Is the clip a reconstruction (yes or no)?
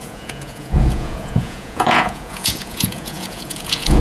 yes